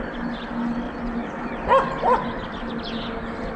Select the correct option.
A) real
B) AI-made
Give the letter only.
A